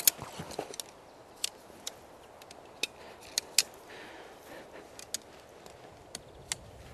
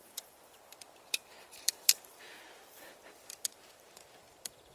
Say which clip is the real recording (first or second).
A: first